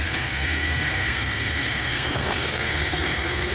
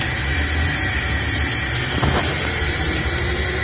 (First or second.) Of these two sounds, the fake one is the first